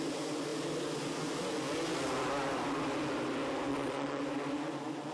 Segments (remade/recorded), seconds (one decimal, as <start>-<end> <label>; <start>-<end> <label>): 0.0-3.7 recorded; 3.7-4.2 remade; 4.2-5.1 recorded